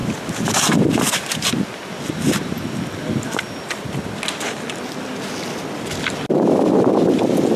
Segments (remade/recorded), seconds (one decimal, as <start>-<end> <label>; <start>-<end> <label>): 0.0-7.6 recorded